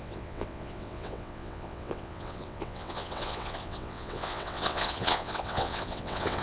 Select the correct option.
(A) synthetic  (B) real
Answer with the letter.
A